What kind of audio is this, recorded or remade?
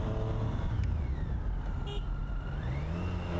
recorded